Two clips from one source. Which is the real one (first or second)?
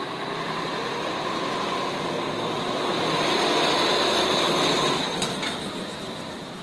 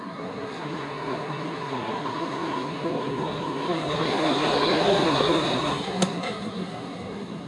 first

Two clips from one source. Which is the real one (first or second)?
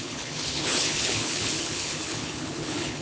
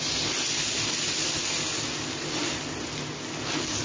second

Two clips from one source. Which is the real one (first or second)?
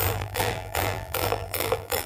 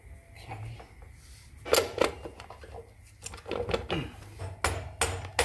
second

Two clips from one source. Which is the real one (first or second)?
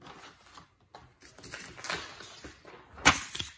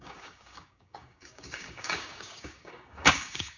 first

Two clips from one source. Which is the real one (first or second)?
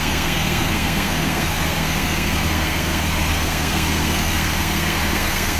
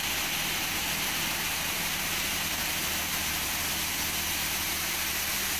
second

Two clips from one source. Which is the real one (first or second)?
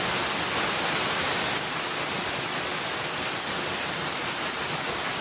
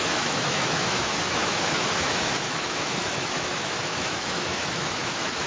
first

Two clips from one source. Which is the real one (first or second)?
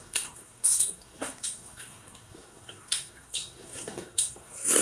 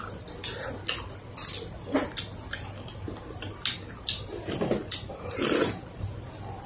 second